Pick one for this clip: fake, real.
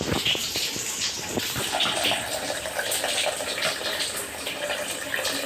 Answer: fake